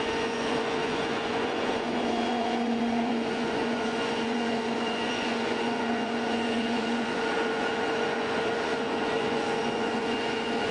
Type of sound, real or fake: fake